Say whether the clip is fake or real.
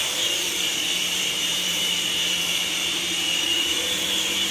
fake